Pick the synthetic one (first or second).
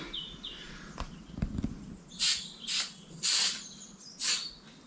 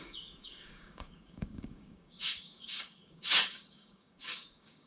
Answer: second